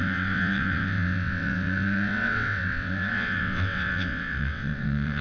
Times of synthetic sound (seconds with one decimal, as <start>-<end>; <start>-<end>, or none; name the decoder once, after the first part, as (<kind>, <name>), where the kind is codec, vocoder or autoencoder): 0.0-5.2 (vocoder, WaveNeXt)